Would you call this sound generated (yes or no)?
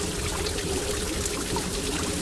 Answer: no